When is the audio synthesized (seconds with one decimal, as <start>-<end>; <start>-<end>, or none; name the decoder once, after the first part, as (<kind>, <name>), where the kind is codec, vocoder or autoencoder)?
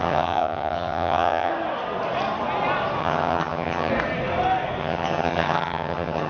0.0-1.5 (vocoder, HiFi-GAN); 3.0-3.9; 4.8-6.3